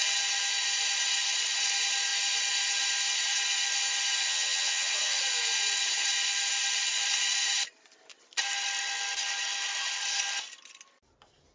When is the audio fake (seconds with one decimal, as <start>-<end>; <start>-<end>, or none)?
4.2-5.2

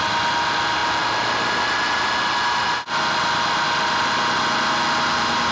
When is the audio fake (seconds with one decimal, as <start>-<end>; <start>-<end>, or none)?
none

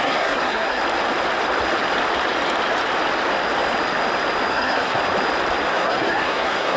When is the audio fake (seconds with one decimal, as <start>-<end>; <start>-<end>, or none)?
0.0-0.8; 4.5-5.0; 5.7-6.8